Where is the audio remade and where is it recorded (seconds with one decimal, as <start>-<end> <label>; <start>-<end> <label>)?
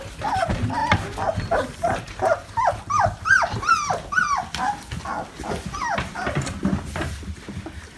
0.0-8.0 recorded